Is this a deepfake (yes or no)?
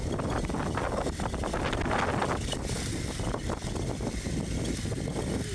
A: no